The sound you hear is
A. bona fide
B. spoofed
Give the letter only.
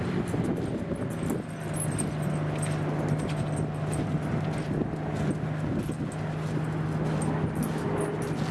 A